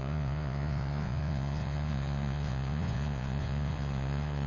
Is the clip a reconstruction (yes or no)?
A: yes